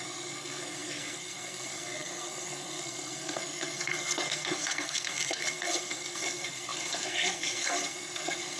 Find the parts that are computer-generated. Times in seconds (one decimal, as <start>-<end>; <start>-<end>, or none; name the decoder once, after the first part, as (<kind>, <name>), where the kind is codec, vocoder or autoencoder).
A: 0.0-8.6 (codec, SNAC)